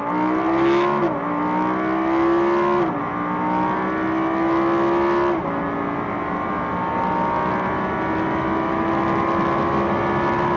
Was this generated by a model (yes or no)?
no